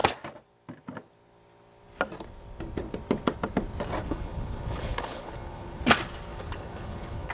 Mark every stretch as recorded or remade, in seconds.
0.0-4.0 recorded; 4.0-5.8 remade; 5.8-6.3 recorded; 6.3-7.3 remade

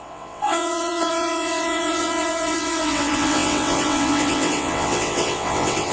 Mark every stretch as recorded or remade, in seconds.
0.0-5.9 remade

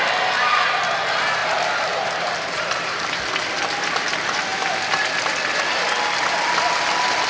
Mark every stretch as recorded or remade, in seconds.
0.0-1.4 recorded; 1.4-3.2 remade; 3.2-7.3 recorded